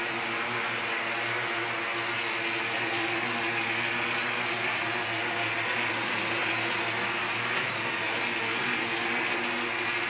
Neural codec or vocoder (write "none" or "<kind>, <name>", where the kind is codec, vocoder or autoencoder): none